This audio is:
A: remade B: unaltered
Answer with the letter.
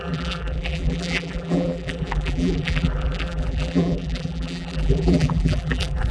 A